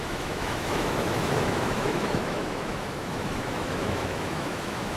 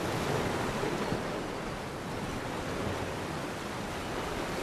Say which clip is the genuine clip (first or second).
second